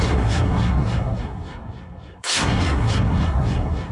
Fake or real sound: fake